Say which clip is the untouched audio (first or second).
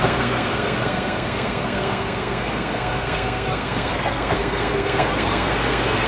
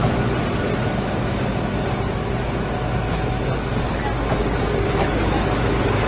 second